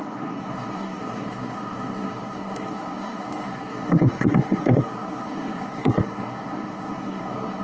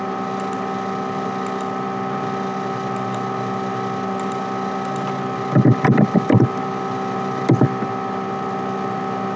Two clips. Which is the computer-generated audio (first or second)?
first